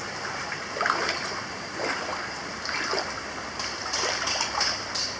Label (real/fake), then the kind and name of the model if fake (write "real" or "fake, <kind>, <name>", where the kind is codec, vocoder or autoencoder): fake, vocoder, BigVGAN v2